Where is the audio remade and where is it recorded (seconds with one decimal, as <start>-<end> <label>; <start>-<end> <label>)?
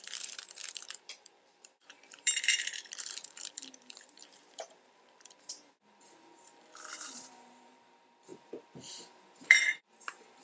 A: 0.0-10.4 remade